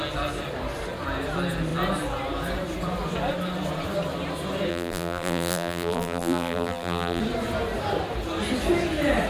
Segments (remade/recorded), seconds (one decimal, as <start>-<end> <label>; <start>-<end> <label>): 0.0-4.7 recorded; 4.7-7.2 remade; 7.2-9.3 recorded